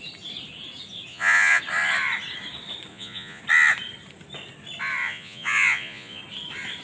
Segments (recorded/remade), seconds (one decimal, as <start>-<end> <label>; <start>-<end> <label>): 0.0-1.1 recorded; 1.1-1.6 remade; 1.6-2.9 recorded; 2.9-3.4 remade; 3.4-5.0 recorded; 5.0-6.2 remade; 6.2-6.8 recorded